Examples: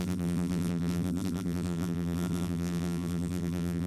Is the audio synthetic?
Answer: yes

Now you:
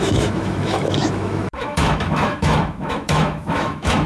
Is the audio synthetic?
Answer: yes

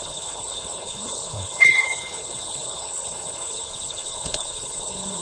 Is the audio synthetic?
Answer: yes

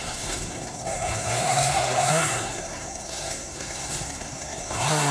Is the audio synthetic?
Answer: yes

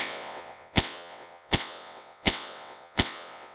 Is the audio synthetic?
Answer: yes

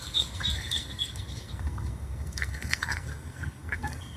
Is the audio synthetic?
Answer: yes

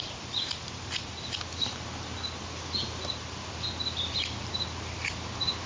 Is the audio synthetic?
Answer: no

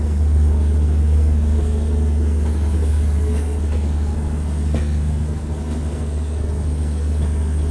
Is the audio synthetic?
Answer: yes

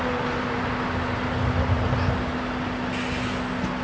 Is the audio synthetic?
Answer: no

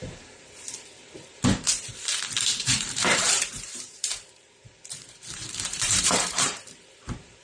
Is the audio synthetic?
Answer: yes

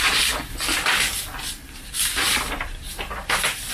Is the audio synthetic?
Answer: yes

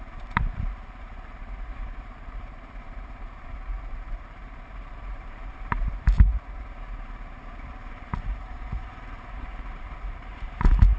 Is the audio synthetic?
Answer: yes